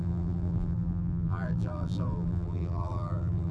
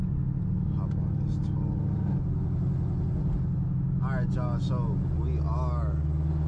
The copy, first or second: first